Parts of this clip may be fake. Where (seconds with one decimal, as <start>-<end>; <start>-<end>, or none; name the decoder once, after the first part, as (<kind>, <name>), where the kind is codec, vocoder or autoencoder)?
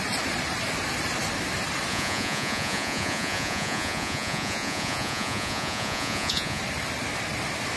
1.9-6.6 (vocoder, Vocos)